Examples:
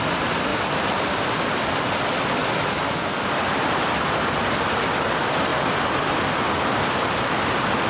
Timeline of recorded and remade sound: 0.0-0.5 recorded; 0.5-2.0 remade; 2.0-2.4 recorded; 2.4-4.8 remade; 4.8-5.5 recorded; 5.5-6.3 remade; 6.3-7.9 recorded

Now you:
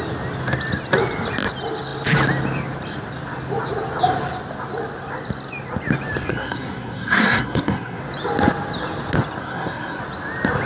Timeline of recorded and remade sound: 0.0-6.3 recorded; 6.3-8.0 remade; 8.0-9.4 recorded; 9.4-10.0 remade; 10.0-10.7 recorded

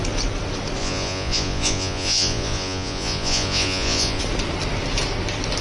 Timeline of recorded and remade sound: 0.0-0.8 recorded; 0.8-4.2 remade; 4.2-5.6 recorded

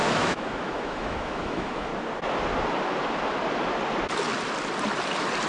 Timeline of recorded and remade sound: 0.0-1.9 remade; 1.9-5.5 recorded